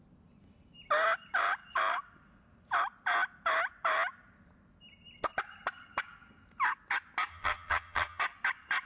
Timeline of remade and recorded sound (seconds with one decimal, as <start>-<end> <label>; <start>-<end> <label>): 0.0-7.3 recorded; 7.3-8.2 remade; 8.2-8.8 recorded